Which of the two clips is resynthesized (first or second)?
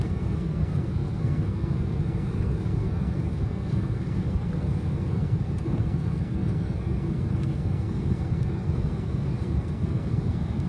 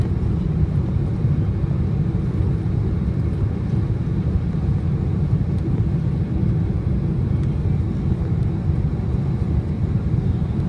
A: first